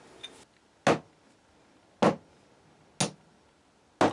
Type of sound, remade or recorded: recorded